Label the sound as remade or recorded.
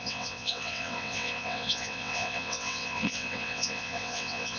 remade